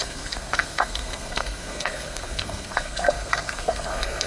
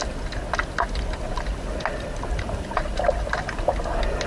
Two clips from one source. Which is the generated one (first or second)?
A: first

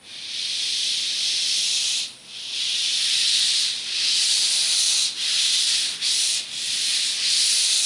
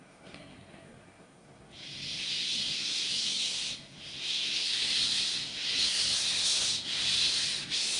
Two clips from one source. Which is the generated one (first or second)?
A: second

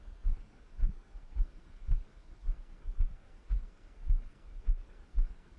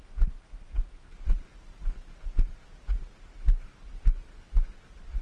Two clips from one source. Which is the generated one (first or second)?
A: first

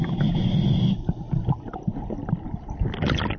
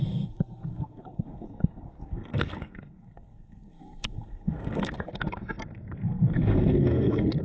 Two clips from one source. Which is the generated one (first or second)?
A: second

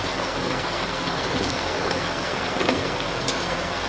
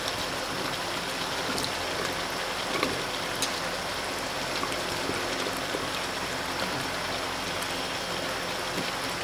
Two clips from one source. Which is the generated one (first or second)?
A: first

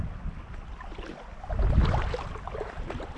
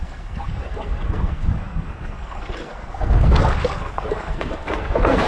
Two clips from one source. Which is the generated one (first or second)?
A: second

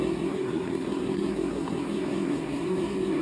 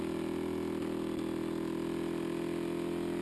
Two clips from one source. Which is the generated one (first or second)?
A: first